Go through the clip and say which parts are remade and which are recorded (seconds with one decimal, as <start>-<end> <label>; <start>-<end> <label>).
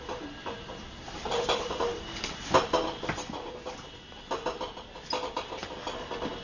0.0-6.4 recorded